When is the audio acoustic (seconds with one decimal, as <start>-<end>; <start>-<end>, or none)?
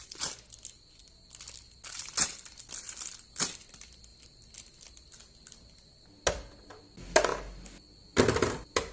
0.0-8.9